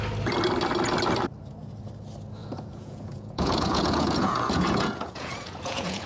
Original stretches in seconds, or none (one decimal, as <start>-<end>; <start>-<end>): 0.0-2.4